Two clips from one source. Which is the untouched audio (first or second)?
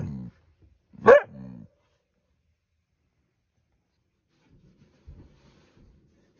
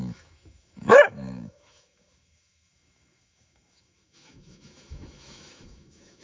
first